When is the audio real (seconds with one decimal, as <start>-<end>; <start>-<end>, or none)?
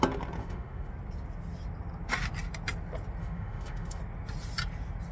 0.0-0.4; 0.9-3.2; 4.0-5.1